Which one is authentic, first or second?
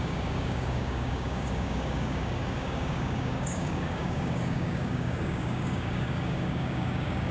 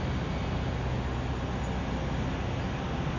second